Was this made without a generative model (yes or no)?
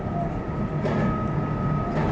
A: yes